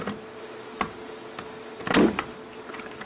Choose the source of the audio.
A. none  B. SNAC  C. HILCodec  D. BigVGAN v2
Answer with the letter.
A